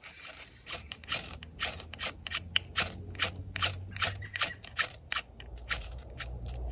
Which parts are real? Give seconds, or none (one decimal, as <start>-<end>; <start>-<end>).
1.4-3.4